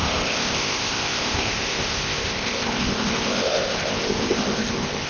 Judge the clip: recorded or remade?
remade